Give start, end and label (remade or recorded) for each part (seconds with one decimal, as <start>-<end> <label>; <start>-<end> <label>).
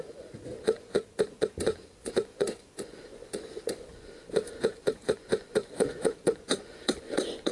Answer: 0.0-7.5 remade